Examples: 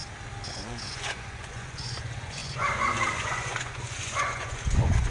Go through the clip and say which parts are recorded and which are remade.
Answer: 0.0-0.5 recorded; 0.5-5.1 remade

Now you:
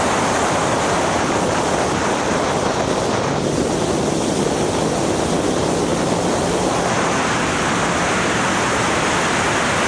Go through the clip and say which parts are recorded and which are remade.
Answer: 0.0-9.9 recorded

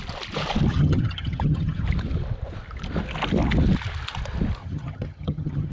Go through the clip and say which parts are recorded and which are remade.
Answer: 0.0-0.7 recorded; 0.7-1.8 remade; 1.8-4.6 recorded; 4.6-5.7 remade

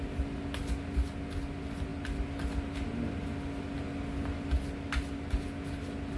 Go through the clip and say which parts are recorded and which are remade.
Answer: 0.0-6.2 recorded